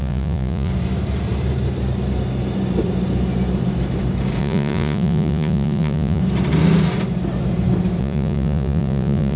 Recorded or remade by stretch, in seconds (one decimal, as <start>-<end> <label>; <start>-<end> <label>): 0.0-0.7 remade; 0.7-4.4 recorded; 4.4-6.2 remade; 6.2-8.0 recorded; 8.0-9.4 remade